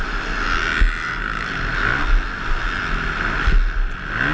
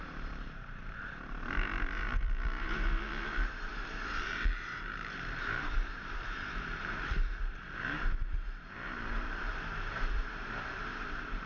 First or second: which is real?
first